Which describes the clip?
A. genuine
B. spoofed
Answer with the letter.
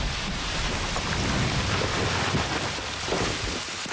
A